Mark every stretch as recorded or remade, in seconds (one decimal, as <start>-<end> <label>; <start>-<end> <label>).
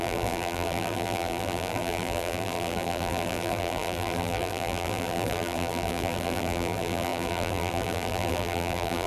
0.0-9.1 remade